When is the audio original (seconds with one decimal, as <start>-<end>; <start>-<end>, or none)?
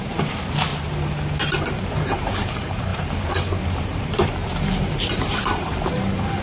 0.7-1.8